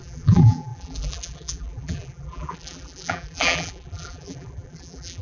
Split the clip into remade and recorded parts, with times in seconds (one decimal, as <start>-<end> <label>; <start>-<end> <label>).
0.0-5.2 remade